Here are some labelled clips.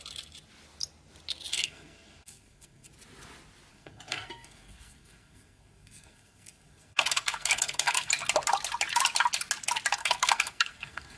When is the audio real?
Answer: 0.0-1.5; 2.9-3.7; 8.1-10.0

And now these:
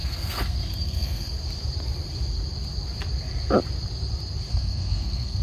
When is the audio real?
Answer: 1.3-4.5

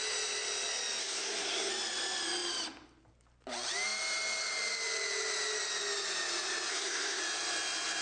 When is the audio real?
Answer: 0.0-1.0; 1.7-6.7; 7.2-8.0

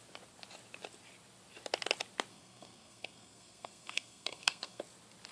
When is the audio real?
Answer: 0.0-2.3; 4.8-5.3

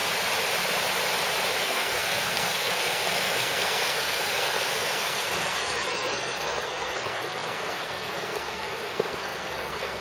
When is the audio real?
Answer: 0.0-1.6

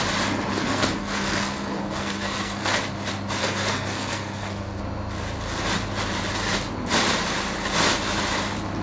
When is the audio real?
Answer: 0.0-0.5; 2.8-3.4; 4.8-8.8